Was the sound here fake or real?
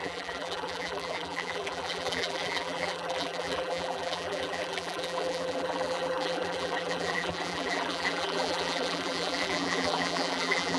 fake